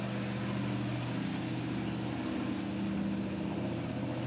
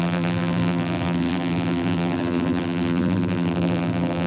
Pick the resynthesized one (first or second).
second